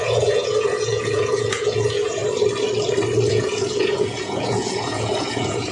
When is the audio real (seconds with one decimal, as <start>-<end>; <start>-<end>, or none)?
2.2-3.3